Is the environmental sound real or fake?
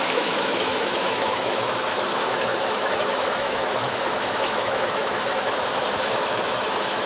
fake